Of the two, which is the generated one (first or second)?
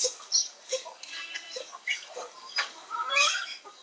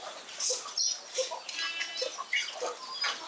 first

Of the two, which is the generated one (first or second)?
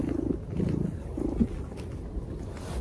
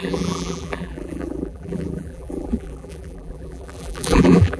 second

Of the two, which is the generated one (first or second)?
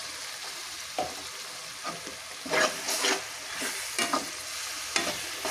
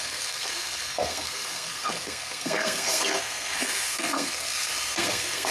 second